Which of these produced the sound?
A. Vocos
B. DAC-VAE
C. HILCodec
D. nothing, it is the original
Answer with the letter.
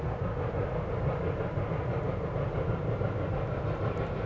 D